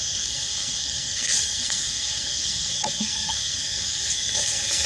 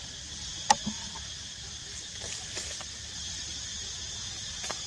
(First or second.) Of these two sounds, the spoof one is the first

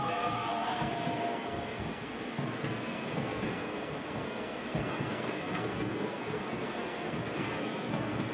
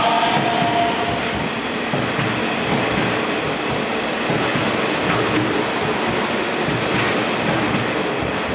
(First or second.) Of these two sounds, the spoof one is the first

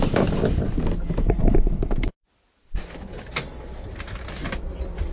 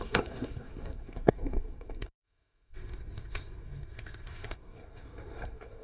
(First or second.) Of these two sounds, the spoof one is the second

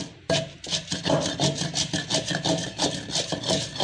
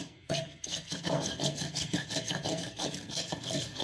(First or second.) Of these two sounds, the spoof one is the second